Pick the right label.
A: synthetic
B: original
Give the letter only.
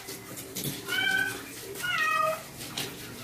B